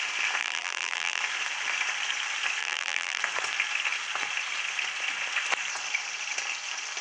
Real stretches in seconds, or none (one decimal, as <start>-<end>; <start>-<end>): 0.0-0.4; 1.2-2.6; 3.2-7.0